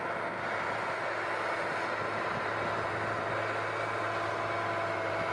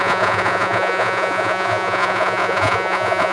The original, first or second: first